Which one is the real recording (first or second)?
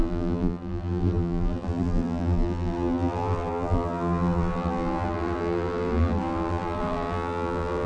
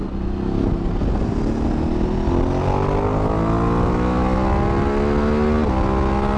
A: second